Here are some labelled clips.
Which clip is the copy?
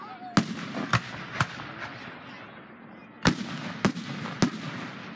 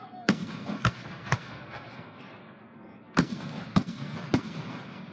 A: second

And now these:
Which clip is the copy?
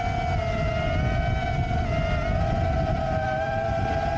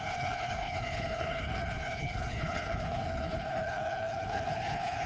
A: second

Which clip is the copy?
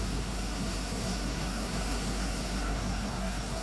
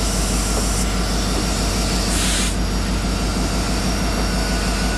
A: first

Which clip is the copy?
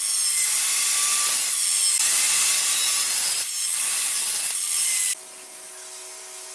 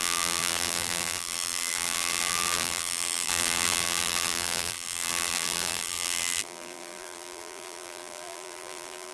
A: second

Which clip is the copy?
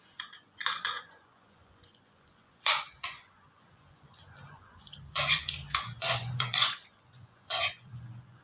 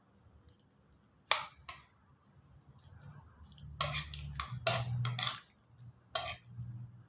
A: first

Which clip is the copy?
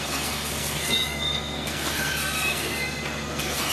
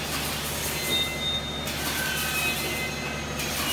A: first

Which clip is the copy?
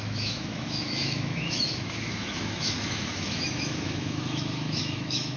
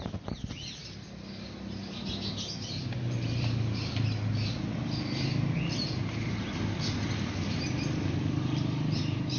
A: first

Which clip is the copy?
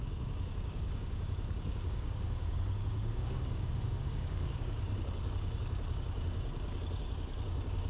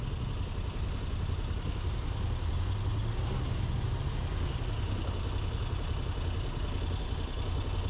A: first